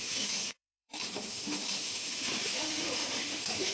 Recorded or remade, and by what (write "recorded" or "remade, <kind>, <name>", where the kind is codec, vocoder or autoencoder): remade, autoencoder, DAC-VAE